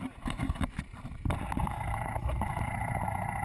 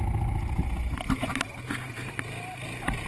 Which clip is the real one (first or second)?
second